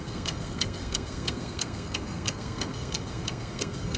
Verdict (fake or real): fake